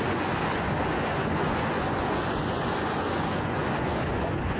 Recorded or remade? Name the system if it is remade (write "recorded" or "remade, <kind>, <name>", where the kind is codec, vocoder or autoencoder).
remade, vocoder, Vocos